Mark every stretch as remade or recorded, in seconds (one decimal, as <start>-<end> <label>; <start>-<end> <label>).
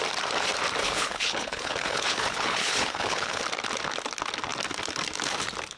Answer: 0.0-0.8 recorded; 0.8-3.4 remade; 3.4-5.8 recorded